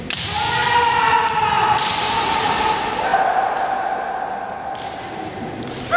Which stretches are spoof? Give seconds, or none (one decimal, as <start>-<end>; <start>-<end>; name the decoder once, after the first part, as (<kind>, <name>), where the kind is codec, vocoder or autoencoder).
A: none